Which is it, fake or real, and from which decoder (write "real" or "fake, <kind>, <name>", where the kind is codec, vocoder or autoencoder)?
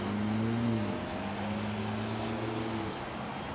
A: real